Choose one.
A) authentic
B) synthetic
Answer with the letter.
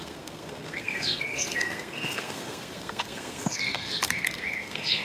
B